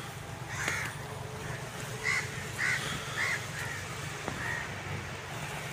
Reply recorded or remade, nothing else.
recorded